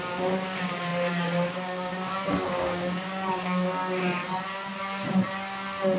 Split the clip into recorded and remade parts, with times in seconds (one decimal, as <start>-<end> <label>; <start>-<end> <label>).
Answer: 0.0-4.2 remade; 4.2-4.8 recorded; 4.8-5.2 remade; 5.2-6.0 recorded